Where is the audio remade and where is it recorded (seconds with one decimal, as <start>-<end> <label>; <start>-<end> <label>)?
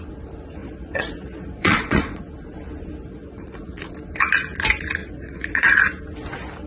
0.0-0.6 recorded; 0.6-2.2 remade; 2.2-3.1 recorded; 3.1-3.9 remade; 3.9-5.0 recorded; 5.0-5.8 remade; 5.8-6.7 recorded